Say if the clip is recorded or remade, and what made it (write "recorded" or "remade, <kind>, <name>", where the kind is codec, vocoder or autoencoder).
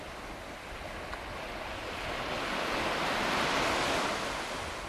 recorded